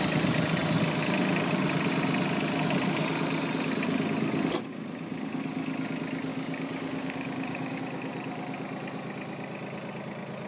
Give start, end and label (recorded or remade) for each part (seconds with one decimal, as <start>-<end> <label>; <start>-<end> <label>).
0.0-6.3 recorded; 6.3-7.8 remade; 7.8-10.5 recorded